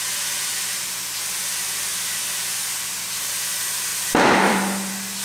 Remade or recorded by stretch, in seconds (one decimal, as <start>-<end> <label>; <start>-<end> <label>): 0.0-3.9 recorded; 3.9-5.2 remade